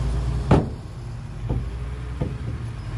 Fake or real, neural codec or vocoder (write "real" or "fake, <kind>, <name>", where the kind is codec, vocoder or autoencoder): real